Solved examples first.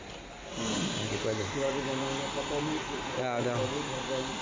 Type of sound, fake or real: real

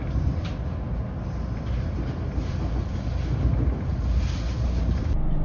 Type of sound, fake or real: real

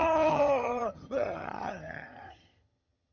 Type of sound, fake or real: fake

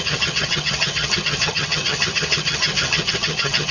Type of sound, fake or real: fake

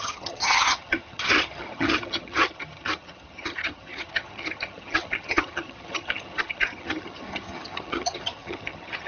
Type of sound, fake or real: fake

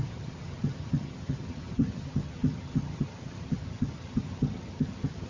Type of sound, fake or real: fake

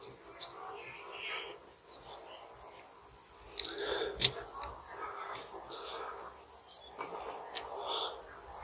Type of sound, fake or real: real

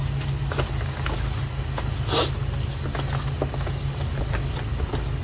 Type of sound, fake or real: real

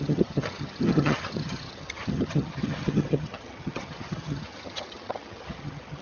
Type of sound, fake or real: fake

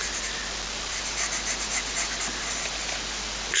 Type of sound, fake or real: real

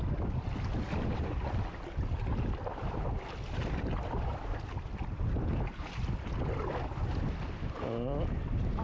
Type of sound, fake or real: real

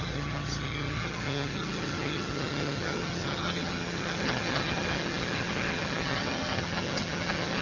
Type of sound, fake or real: fake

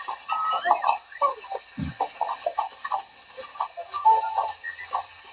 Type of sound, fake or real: real